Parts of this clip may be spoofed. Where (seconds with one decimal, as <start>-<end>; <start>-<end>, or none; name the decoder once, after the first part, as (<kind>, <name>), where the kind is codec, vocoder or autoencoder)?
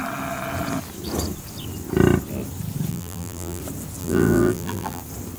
2.9-3.6 (vocoder, BigVGAN v2); 4.0-5.0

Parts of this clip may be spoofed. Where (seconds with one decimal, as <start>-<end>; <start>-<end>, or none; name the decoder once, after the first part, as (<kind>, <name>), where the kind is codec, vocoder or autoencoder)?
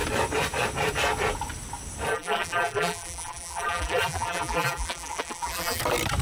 2.1-5.8 (vocoder, BigVGAN v2)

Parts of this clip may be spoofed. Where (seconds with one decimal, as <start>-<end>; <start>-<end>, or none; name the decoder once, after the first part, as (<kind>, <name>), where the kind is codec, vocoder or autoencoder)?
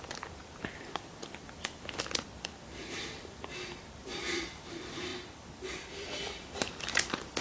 0.0-7.4 (vocoder, BigVGAN v2)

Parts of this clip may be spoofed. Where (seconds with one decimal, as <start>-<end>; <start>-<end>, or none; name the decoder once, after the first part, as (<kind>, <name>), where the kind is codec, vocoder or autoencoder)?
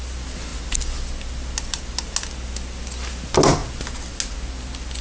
none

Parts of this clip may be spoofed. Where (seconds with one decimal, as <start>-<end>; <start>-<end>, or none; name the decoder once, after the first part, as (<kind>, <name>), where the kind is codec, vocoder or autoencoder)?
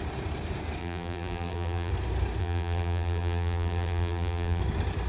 0.8-1.9 (vocoder, BigVGAN v2); 2.4-4.6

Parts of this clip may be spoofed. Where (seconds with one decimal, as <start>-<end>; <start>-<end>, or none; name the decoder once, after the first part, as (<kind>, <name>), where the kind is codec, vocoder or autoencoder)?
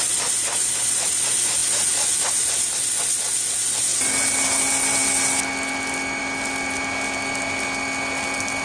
none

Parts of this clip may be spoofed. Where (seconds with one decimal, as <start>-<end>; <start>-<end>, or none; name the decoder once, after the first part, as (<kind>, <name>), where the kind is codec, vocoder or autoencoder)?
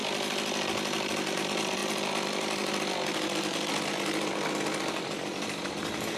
1.3-6.2 (vocoder, BigVGAN v2)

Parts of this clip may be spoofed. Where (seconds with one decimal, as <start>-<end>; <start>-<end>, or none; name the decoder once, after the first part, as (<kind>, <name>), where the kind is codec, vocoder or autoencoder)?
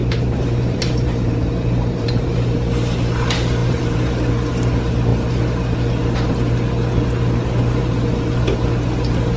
0.0-2.3 (vocoder, BigVGAN v2); 3.6-4.3; 7.8-8.4